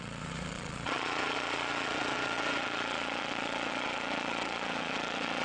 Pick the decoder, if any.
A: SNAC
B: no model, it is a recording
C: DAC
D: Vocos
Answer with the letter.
D